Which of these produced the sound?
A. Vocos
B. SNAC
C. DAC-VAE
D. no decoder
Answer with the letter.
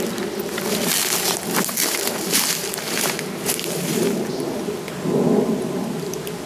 D